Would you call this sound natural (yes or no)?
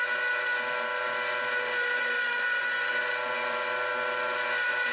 yes